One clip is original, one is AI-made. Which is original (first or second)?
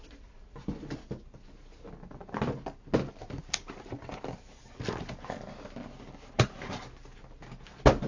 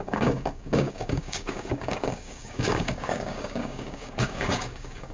first